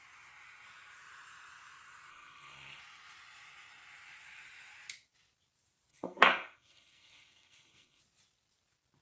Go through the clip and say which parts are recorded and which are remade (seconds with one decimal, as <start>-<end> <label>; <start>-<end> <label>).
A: 0.0-2.1 recorded; 2.1-2.8 remade; 2.8-5.9 recorded; 5.9-8.0 remade; 8.0-9.0 recorded